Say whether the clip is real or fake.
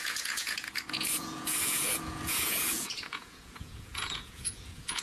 fake